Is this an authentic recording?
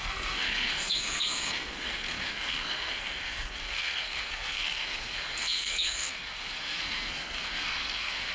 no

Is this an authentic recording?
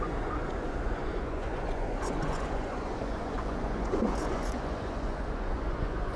no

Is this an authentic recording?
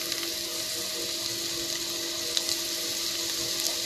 yes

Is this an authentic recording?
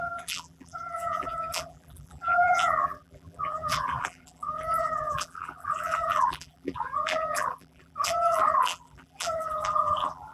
no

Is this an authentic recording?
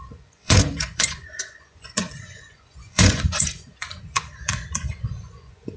no